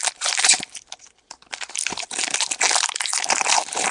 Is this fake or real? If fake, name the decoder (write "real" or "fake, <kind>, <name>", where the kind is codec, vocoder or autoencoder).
real